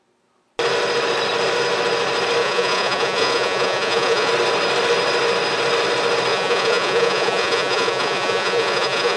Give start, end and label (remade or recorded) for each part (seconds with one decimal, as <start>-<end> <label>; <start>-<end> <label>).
0.0-2.4 recorded; 2.4-4.3 remade; 4.3-6.3 recorded; 6.3-9.2 remade

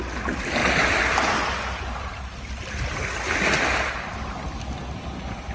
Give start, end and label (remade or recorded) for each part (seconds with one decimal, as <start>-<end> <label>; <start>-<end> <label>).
0.0-5.5 recorded

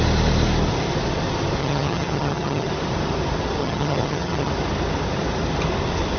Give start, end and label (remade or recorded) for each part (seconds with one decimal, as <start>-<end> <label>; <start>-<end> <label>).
0.0-1.6 recorded; 1.6-2.7 remade; 2.7-3.6 recorded; 3.6-4.5 remade; 4.5-6.2 recorded

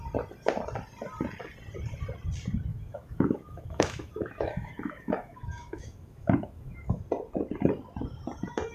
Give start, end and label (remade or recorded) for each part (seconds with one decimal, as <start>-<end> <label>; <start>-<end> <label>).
0.0-2.7 recorded; 2.7-7.0 remade; 7.0-8.7 recorded

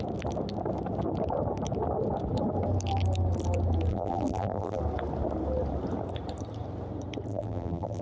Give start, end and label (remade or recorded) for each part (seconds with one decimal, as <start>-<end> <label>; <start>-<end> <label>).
0.0-3.9 recorded; 3.9-4.8 remade; 4.8-7.3 recorded; 7.3-8.0 remade

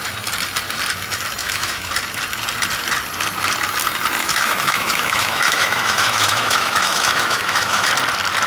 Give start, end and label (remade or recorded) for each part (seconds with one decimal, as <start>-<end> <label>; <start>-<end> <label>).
0.0-1.4 recorded; 1.4-1.9 remade; 1.9-4.2 recorded; 4.2-7.9 remade; 7.9-8.5 recorded

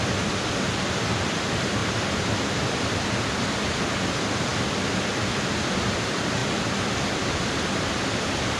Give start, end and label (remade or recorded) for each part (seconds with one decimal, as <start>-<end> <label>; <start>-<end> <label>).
0.0-8.6 recorded